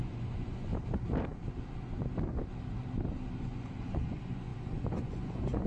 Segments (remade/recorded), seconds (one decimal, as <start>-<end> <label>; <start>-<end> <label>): 0.0-0.7 remade; 0.7-3.4 recorded; 3.4-5.7 remade